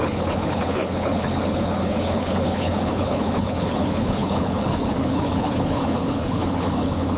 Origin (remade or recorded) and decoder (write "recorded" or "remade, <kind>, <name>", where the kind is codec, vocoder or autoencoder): remade, codec, HILCodec